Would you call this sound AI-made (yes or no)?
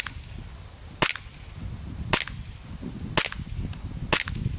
no